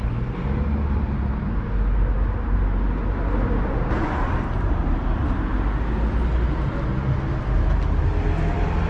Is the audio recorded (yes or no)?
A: yes